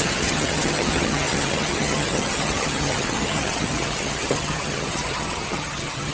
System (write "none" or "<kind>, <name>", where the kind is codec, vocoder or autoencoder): vocoder, HiFi-GAN